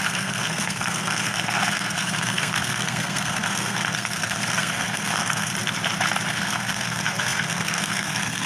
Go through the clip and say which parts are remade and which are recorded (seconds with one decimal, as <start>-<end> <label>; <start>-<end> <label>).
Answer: 0.0-5.5 remade; 5.5-6.3 recorded; 6.3-8.5 remade

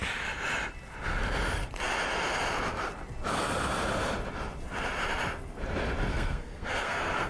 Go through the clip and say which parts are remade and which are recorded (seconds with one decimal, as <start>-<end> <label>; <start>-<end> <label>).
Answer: 0.0-6.1 recorded; 6.1-7.3 remade

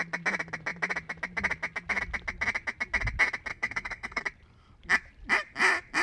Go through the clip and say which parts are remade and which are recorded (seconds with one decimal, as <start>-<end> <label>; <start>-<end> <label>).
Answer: 0.0-3.5 recorded; 3.5-4.2 remade; 4.2-6.0 recorded

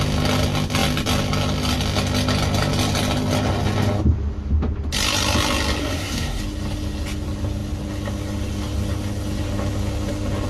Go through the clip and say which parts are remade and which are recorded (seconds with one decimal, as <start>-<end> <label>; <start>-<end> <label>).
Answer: 0.0-5.8 recorded; 5.8-6.4 remade; 6.4-10.5 recorded

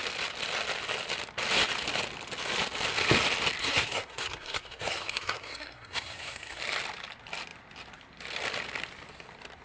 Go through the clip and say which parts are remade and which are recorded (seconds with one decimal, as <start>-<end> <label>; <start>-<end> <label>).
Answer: 0.0-3.6 recorded; 3.6-6.6 remade; 6.6-9.6 recorded

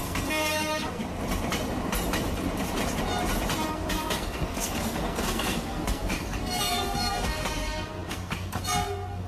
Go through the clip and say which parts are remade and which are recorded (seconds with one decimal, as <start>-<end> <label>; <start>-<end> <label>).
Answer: 0.0-1.0 remade; 1.0-3.7 recorded; 3.7-9.3 remade